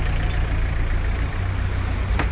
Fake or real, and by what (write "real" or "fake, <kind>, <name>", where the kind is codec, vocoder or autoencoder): real